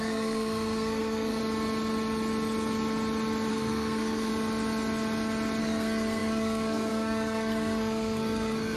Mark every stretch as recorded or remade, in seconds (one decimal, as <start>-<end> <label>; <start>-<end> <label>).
0.0-1.4 remade; 1.4-3.5 recorded; 3.5-4.3 remade; 4.3-5.6 recorded; 5.6-8.8 remade